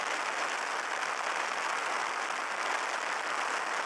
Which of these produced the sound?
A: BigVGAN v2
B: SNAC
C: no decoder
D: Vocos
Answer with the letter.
C